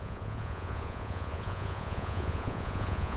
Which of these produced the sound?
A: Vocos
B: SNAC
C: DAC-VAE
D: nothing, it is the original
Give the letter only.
A